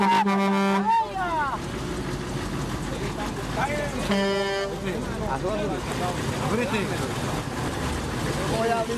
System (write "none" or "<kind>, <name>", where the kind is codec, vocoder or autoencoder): none